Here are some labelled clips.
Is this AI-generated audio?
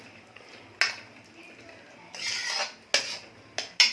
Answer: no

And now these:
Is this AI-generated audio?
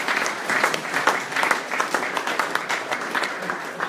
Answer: yes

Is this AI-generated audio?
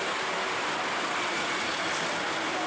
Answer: no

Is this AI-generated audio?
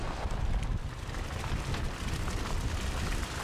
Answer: no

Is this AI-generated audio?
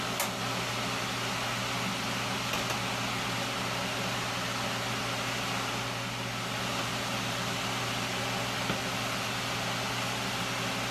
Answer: no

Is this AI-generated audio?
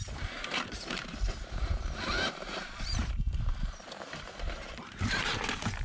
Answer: yes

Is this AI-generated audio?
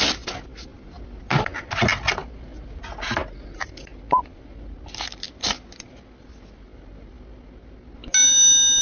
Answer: no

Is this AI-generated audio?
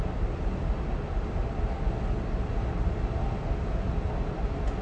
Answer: no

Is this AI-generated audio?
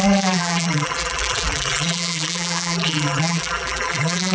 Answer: yes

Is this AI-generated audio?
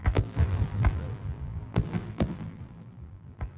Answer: yes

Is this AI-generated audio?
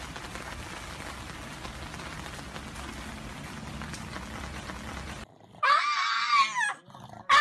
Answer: no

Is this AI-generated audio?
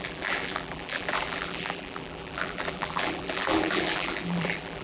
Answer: yes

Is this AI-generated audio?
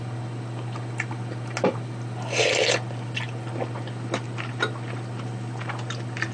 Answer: no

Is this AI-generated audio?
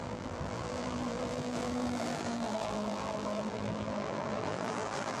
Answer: yes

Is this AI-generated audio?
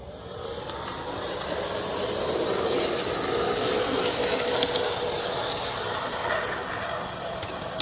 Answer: no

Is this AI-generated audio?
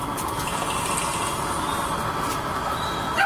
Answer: no